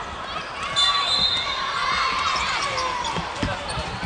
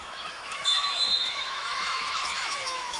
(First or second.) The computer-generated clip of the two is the second